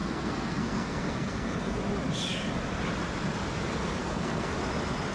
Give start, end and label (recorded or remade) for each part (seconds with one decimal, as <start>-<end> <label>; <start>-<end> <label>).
0.0-1.8 remade; 1.8-4.0 recorded; 4.0-4.5 remade; 4.5-5.1 recorded